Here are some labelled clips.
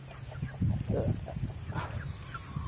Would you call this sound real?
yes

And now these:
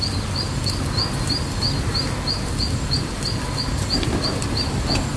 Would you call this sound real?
yes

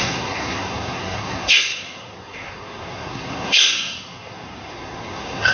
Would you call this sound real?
no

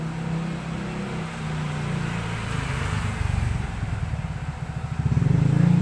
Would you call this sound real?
yes